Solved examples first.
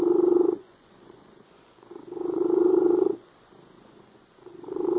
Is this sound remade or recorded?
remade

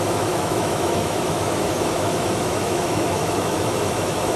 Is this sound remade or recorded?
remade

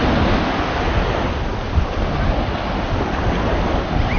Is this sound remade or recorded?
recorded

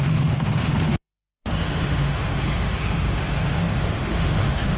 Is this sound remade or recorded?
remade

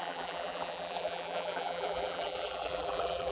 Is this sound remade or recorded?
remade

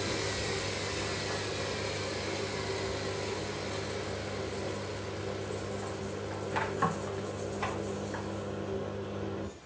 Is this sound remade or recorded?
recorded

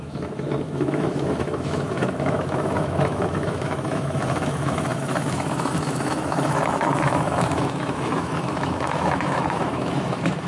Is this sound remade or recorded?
remade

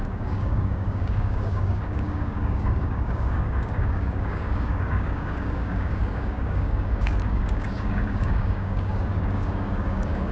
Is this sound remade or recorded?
remade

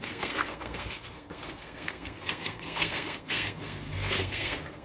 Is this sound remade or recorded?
remade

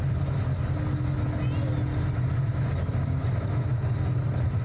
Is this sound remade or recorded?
recorded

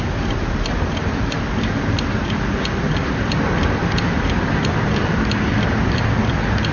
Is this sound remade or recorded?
recorded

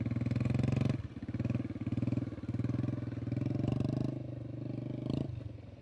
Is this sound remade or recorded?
recorded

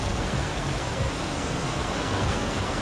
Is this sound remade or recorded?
remade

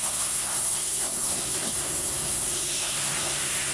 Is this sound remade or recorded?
remade